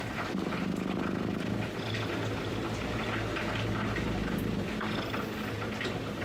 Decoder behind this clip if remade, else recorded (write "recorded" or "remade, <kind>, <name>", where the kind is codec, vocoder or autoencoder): recorded